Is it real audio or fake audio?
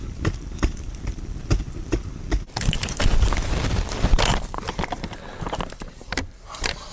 fake